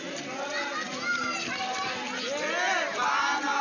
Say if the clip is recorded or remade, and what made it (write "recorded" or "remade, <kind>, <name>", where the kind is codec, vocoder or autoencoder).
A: recorded